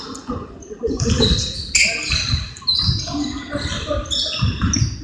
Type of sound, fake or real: real